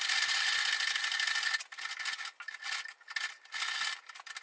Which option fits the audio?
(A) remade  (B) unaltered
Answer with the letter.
B